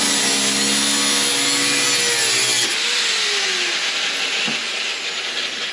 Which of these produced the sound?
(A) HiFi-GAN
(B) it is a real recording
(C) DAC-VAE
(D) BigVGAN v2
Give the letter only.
B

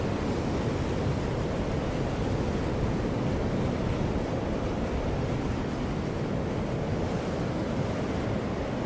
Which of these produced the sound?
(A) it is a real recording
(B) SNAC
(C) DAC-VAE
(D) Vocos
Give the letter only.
A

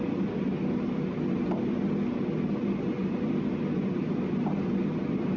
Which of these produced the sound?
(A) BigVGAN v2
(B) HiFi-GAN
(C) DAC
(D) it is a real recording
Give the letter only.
D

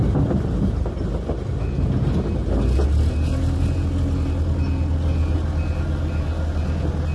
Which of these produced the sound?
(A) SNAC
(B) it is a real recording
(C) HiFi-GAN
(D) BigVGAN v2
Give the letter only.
B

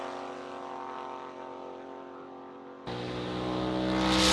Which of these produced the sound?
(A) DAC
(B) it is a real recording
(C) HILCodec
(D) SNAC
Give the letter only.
B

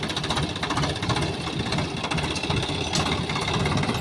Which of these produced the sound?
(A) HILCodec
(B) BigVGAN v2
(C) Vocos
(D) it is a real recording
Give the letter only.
D